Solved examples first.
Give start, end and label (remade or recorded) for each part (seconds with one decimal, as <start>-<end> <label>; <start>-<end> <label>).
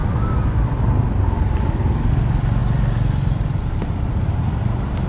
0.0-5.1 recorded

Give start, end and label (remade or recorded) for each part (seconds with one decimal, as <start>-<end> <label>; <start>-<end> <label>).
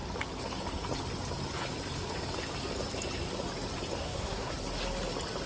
0.0-4.0 recorded; 4.0-4.5 remade; 4.5-5.5 recorded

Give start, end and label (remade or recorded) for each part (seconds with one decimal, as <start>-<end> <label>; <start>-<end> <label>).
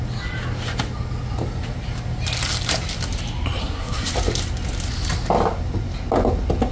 0.0-3.6 recorded; 3.6-4.1 remade; 4.1-6.7 recorded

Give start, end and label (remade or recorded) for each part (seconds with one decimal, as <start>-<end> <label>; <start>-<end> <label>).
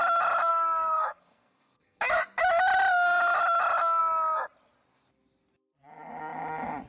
0.0-0.5 recorded; 0.5-2.0 remade; 2.0-6.9 recorded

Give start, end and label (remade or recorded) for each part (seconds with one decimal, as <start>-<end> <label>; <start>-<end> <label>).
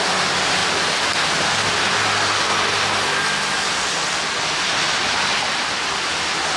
0.0-6.6 recorded